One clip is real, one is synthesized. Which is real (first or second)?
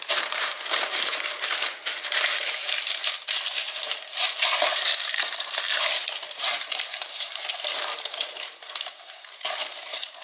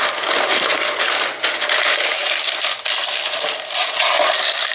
second